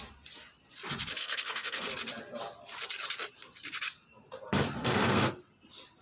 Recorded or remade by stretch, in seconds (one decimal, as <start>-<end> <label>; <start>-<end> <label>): 0.0-1.2 recorded; 1.2-1.9 remade; 1.9-4.8 recorded; 4.8-5.3 remade; 5.3-6.0 recorded